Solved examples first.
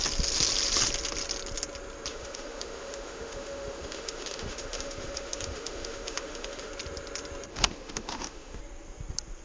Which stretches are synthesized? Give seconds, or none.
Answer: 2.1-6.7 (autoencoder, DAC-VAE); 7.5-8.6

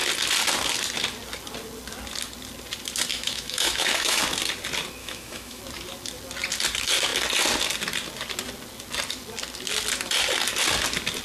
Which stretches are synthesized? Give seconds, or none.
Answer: 3.1-4.2 (autoencoder, DAC-VAE); 5.0-5.6

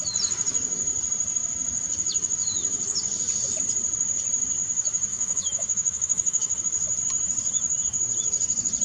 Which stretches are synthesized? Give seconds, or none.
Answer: 5.1-6.6 (autoencoder, DAC-VAE)

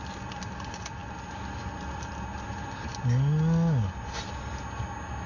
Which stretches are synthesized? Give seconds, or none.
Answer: none

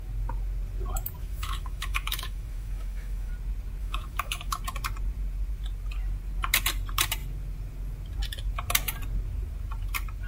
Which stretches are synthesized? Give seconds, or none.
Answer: 1.2-3.3 (autoencoder, DAC-VAE); 3.8-4.6

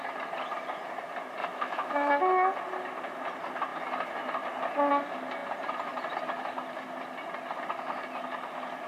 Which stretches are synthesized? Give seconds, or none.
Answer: 1.4-2.1 (autoencoder, DAC-VAE)

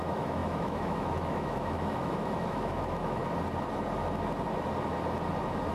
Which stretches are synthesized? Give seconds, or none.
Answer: 0.0-3.2 (autoencoder, DAC-VAE)

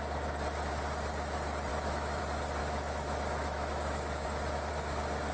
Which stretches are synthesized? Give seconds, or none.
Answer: 1.7-2.2 (autoencoder, DAC-VAE); 2.6-4.7